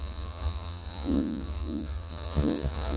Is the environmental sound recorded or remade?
remade